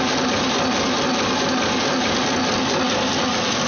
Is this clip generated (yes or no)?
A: no